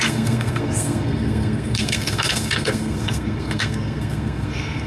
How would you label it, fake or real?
fake